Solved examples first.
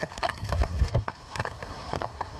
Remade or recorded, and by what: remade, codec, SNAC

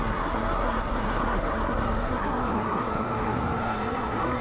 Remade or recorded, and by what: remade, codec, SNAC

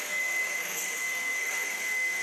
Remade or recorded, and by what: remade, codec, SNAC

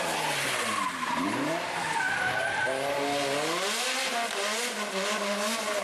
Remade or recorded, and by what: recorded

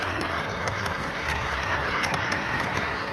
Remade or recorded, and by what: remade, codec, SNAC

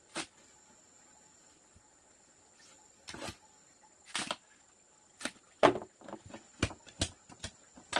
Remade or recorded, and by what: recorded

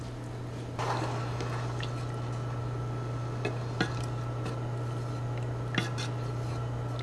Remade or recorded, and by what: recorded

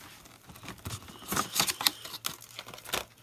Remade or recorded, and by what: recorded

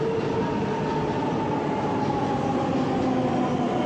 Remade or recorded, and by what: recorded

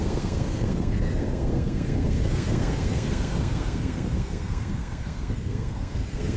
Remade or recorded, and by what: remade, codec, SNAC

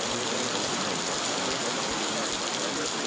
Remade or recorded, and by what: recorded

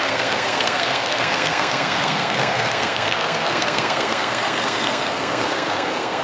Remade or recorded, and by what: remade, codec, SNAC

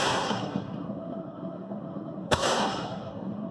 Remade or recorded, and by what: remade, codec, SNAC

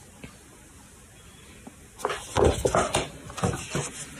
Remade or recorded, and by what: recorded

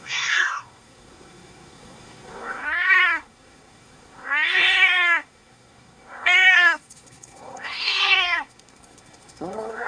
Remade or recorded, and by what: remade, codec, SNAC